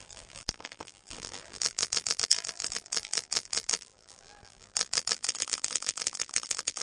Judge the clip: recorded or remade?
remade